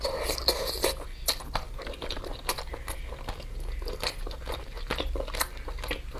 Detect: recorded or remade recorded